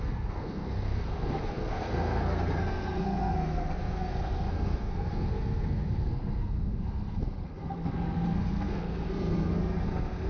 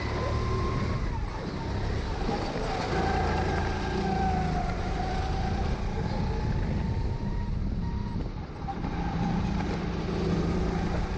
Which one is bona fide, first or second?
second